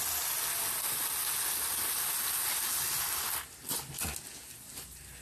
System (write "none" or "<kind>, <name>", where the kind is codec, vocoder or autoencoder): none